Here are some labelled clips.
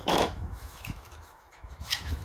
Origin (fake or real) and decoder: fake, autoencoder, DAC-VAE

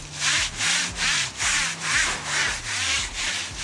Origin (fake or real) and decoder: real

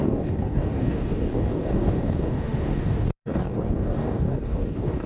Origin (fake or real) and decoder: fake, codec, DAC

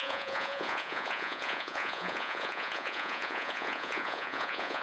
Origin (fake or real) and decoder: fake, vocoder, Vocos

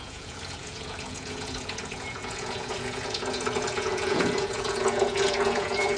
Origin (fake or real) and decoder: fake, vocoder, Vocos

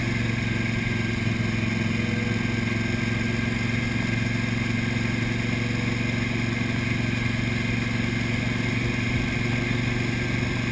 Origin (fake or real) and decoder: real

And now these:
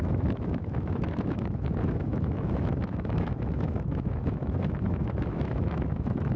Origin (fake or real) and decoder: fake, autoencoder, DAC-VAE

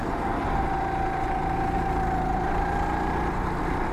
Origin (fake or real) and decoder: real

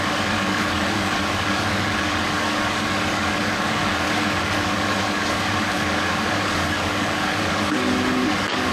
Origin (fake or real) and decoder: fake, codec, DAC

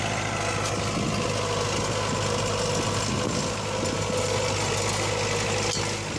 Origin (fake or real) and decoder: real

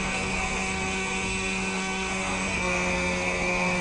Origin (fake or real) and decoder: fake, codec, SNAC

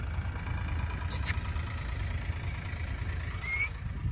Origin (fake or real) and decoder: real